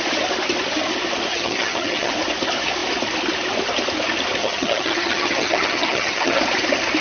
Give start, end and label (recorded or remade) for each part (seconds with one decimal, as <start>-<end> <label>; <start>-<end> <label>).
0.0-1.3 recorded; 1.3-2.1 remade; 2.1-4.4 recorded; 4.4-6.4 remade; 6.4-7.0 recorded